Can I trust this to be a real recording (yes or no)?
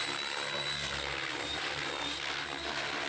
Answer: yes